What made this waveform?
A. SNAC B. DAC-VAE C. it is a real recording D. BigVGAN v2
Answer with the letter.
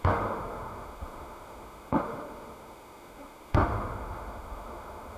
B